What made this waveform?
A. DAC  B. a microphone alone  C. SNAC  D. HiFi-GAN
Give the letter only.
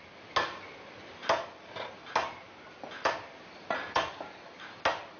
B